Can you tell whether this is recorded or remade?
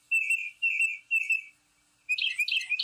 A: recorded